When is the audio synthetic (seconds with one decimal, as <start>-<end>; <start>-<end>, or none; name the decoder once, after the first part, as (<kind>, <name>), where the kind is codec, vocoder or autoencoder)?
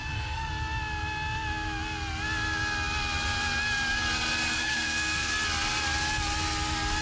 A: 0.0-0.5 (codec, SNAC); 4.5-5.3